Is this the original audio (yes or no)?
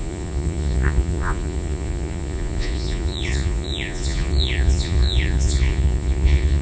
no